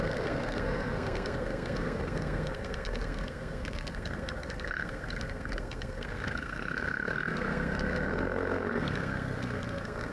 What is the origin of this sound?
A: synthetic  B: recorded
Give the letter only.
A